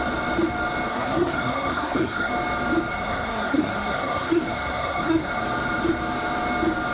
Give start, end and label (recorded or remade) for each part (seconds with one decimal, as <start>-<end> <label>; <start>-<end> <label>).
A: 0.0-0.9 recorded; 0.9-2.3 remade; 2.3-2.9 recorded; 2.9-5.4 remade; 5.4-6.9 recorded